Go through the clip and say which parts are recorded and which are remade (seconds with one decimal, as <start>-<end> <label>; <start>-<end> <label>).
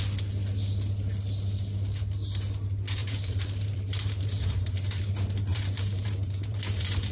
0.0-3.0 recorded; 3.0-5.0 remade; 5.0-5.5 recorded; 5.5-7.1 remade